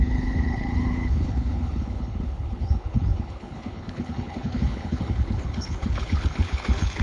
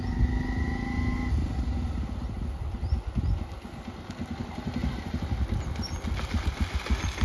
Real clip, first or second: second